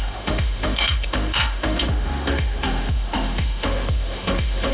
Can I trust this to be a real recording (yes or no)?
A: no